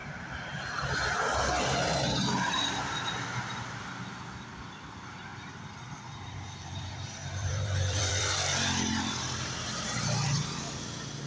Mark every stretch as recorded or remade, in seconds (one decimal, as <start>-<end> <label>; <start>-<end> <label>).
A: 0.0-5.3 remade; 5.3-6.2 recorded; 6.2-11.3 remade